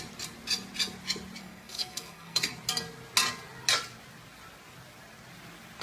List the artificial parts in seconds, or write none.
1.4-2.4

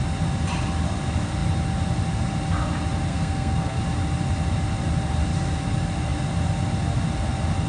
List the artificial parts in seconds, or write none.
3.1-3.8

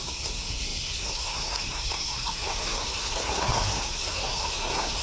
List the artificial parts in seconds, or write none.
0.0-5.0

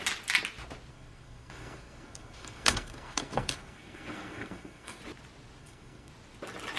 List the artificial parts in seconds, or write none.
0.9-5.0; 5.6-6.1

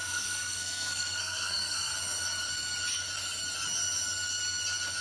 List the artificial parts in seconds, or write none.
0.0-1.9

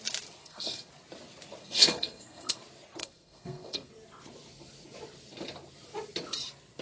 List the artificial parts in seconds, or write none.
0.4-0.9; 1.6-2.6; 3.0-3.9